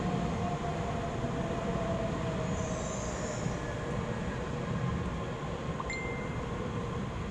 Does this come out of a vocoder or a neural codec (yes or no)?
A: no